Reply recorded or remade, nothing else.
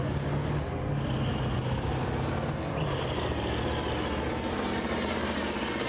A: recorded